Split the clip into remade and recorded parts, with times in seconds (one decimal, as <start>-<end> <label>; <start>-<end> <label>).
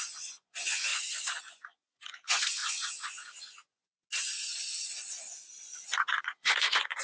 0.0-0.9 remade; 0.9-1.4 recorded; 1.4-3.8 remade; 3.8-6.2 recorded; 6.2-7.0 remade